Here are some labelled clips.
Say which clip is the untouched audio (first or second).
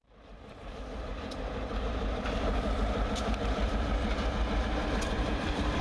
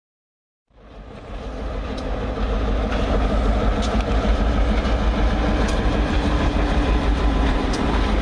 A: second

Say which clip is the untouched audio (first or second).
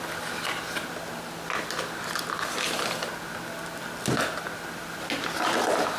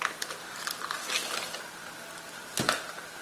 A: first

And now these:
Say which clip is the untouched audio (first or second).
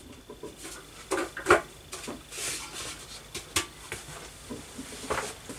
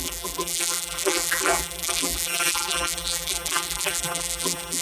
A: first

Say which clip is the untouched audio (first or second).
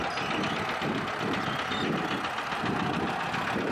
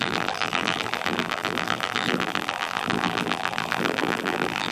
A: first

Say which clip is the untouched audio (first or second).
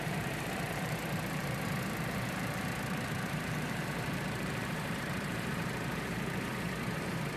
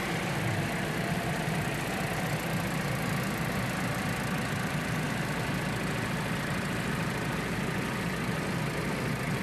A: second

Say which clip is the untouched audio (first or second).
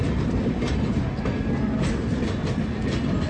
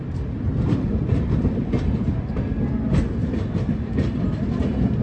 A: first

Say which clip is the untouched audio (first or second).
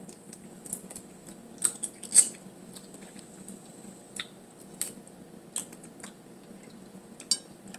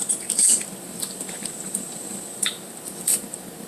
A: first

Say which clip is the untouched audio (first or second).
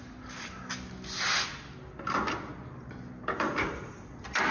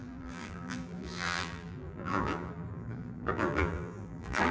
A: first